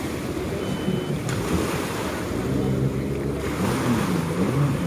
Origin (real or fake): real